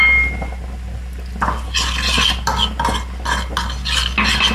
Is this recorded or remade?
recorded